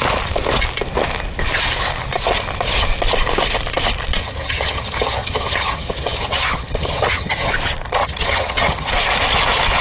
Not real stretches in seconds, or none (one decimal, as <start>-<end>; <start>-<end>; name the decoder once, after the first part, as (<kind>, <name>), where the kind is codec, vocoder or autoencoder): 4.2-7.5 (vocoder, HiFi-GAN); 8.0-8.9